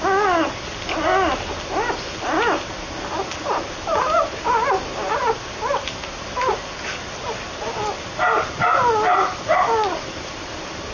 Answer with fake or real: real